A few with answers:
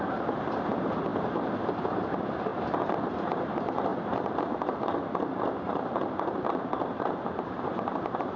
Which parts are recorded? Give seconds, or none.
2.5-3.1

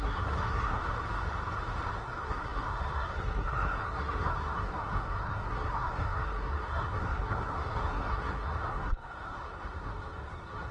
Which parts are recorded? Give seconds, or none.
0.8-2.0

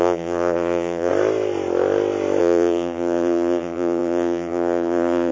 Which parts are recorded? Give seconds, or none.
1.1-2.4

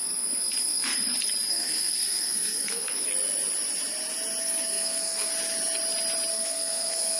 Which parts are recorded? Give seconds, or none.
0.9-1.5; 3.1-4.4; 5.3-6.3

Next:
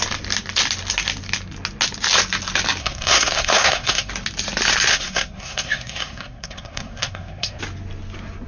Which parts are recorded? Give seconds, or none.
0.0-2.8; 4.1-4.9; 7.6-8.5

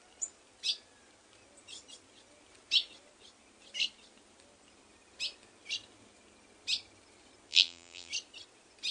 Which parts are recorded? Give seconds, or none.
0.0-7.5; 8.1-8.9